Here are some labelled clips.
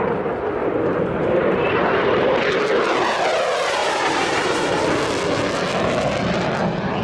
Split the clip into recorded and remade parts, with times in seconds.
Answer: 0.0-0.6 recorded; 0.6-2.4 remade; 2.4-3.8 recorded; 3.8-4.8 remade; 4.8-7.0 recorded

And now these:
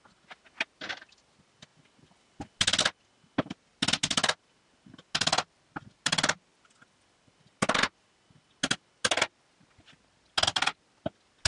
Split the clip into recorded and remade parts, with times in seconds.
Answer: 0.0-11.5 recorded

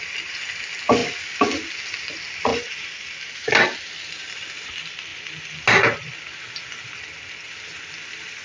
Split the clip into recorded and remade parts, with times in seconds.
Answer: 0.0-2.5 recorded; 2.5-3.5 remade; 3.5-8.4 recorded

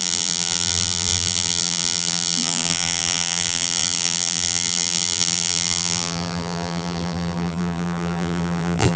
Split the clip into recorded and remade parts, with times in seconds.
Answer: 0.0-9.0 remade

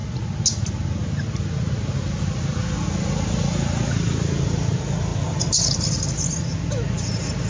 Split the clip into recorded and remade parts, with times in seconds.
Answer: 0.0-7.5 recorded

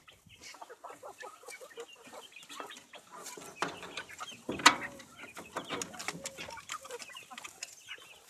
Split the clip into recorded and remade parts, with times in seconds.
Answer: 0.0-0.5 recorded; 0.5-4.5 remade; 4.5-8.3 recorded